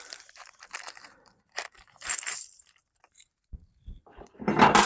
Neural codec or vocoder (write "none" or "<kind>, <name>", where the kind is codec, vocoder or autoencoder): vocoder, BigVGAN v2